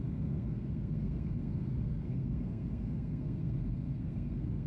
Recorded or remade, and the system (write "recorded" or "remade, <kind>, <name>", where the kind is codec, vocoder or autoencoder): remade, codec, SNAC